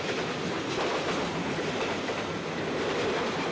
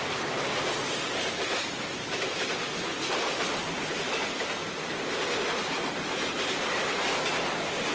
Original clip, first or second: second